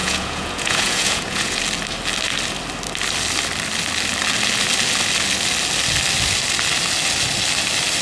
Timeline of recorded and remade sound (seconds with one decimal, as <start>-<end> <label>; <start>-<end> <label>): 0.0-1.6 remade; 1.6-8.0 recorded